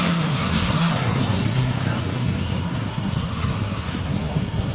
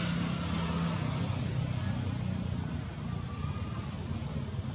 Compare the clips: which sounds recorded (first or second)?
second